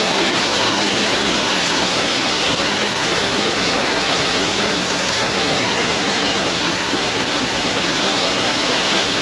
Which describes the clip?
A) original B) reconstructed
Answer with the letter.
B